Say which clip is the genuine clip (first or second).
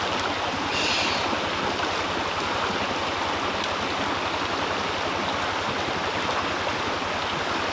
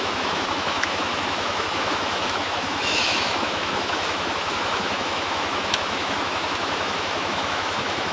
first